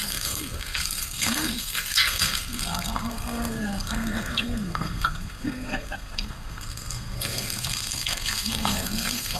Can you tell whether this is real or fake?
fake